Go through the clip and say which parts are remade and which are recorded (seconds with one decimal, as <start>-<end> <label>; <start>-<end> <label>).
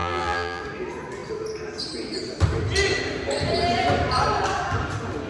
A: 0.0-0.6 remade; 0.6-5.3 recorded